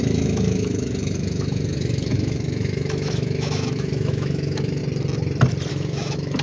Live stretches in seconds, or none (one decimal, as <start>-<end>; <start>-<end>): 4.8-5.7